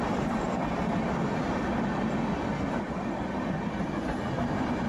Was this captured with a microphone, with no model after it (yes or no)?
yes